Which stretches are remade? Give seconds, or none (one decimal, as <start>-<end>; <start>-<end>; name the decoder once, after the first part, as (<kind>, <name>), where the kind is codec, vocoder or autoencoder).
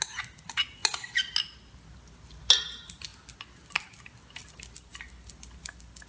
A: none